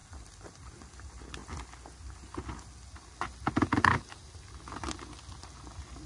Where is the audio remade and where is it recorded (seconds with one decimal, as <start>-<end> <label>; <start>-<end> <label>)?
0.0-0.7 remade; 0.7-6.1 recorded